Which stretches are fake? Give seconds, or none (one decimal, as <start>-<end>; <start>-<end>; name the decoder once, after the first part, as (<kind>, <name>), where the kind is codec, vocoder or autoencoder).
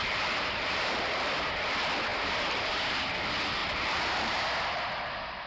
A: 0.0-1.1 (vocoder, BigVGAN v2); 2.1-3.0; 3.6-4.4